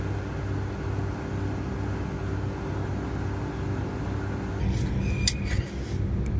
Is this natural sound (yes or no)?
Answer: yes